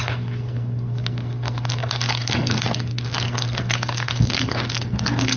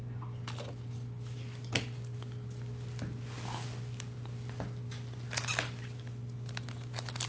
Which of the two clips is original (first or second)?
second